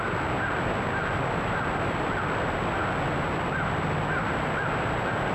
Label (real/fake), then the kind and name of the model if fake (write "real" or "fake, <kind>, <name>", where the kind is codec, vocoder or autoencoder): real